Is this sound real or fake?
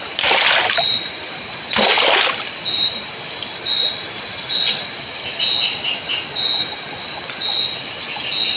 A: real